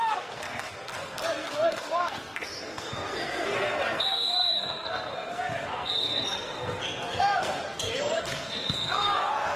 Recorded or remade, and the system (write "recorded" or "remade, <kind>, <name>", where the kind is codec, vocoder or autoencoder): remade, codec, SNAC